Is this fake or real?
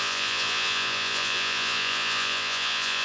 fake